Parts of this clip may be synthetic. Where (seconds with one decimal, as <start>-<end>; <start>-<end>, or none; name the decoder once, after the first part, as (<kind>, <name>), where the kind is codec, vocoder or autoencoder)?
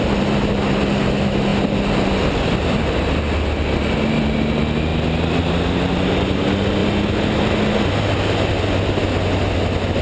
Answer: none